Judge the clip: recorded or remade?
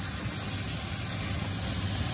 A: recorded